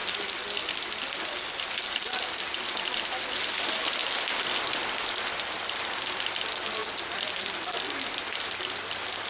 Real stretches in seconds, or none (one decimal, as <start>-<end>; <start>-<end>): 0.0-9.3